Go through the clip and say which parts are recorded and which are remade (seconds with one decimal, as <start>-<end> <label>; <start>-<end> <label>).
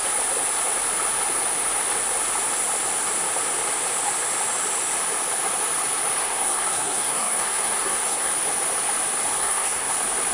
0.0-6.2 recorded; 6.2-8.3 remade; 8.3-9.4 recorded; 9.4-9.9 remade; 9.9-10.3 recorded